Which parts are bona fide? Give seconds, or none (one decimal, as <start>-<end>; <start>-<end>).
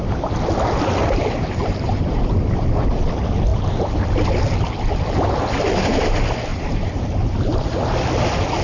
0.0-1.6; 2.2-3.5; 4.1-6.5; 7.0-8.6